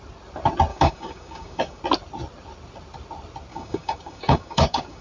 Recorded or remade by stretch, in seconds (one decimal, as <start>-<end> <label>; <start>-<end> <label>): 0.0-0.7 recorded; 0.7-1.8 remade; 1.8-3.5 recorded; 3.5-5.0 remade